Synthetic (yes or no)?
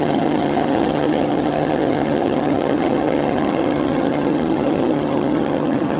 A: yes